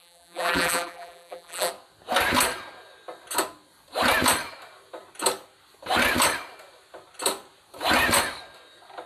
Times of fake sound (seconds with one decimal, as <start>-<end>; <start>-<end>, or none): 0.0-1.7